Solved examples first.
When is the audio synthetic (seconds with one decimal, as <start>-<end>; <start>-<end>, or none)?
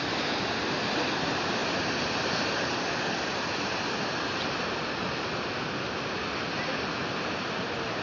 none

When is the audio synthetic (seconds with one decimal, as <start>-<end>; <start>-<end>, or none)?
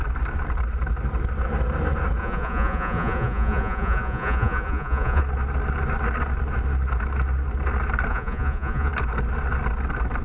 2.2-5.2; 8.1-8.9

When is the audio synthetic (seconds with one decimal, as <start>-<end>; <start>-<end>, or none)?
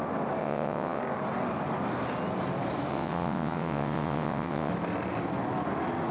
0.4-1.0; 2.9-4.7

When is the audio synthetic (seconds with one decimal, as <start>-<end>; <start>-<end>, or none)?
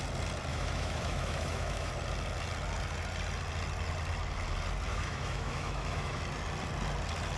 0.5-1.9; 4.9-6.2